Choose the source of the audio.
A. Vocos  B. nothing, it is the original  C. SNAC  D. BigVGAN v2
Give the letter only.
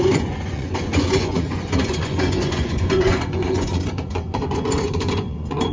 A